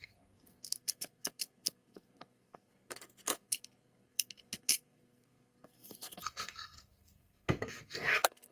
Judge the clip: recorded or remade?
remade